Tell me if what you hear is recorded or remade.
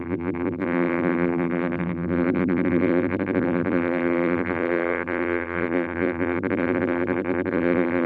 remade